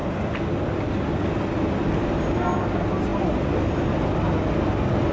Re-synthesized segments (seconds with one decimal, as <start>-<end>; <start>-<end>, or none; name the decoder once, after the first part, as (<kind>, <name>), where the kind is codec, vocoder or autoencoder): none